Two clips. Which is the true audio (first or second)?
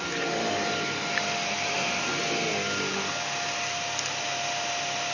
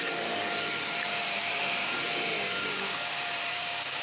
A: first